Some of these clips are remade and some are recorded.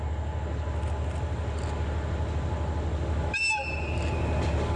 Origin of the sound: recorded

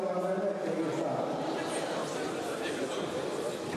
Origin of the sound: recorded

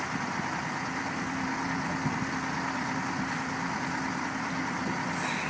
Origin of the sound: recorded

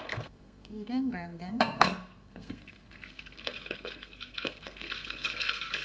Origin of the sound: remade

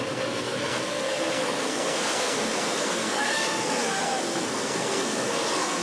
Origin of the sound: remade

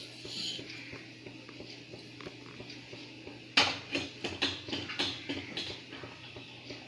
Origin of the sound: recorded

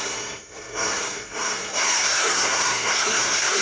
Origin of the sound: remade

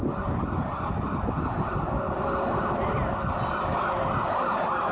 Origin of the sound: recorded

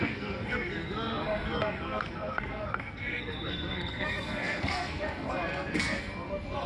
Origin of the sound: remade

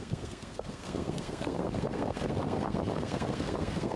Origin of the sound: remade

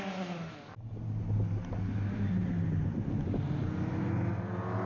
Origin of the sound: recorded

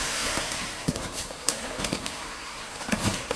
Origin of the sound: remade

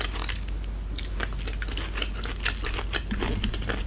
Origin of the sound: recorded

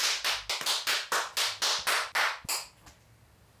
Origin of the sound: recorded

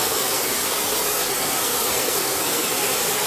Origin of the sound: remade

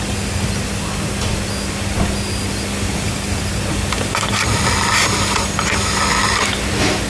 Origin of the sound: recorded